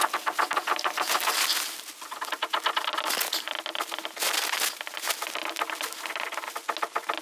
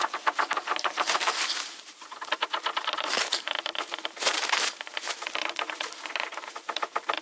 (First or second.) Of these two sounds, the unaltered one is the first